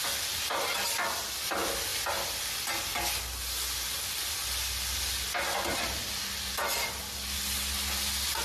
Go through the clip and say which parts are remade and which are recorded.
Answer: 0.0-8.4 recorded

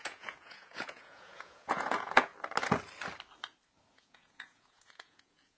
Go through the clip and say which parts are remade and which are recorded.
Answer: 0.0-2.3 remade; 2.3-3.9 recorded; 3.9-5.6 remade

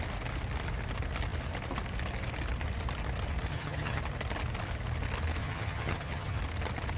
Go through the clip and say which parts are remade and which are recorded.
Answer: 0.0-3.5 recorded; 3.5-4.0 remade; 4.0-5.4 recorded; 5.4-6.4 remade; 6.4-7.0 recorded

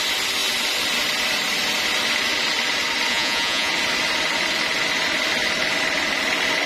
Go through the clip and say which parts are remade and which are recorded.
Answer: 0.0-3.1 recorded; 3.1-3.7 remade; 3.7-6.7 recorded

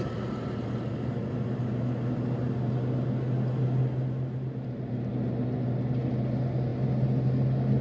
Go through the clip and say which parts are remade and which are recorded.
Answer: 0.0-7.8 recorded

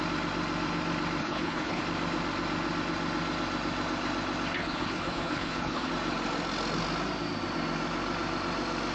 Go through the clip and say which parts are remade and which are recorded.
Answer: 0.0-1.2 recorded; 1.2-1.8 remade; 1.8-4.6 recorded; 4.6-5.9 remade; 5.9-8.9 recorded

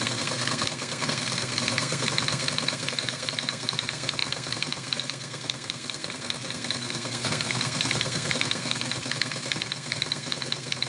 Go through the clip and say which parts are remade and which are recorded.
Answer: 0.0-10.9 remade